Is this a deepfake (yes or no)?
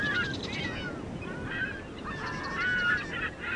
no